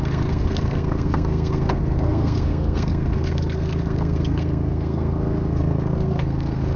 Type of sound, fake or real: fake